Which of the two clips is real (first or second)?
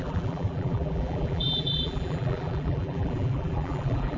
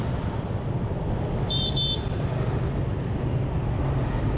second